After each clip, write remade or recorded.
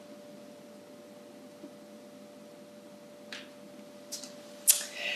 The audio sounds recorded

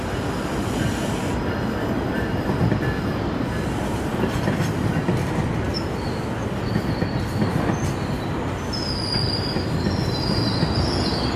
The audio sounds recorded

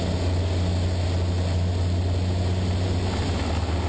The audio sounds recorded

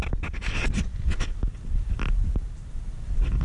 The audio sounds recorded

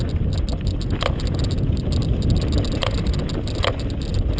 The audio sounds recorded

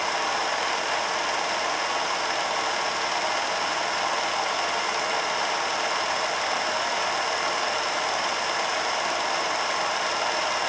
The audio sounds recorded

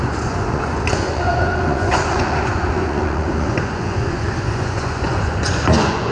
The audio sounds remade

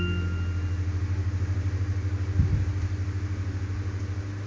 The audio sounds recorded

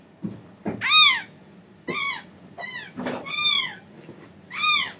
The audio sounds recorded